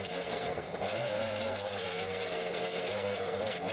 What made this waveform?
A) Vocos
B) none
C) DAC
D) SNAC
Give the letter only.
D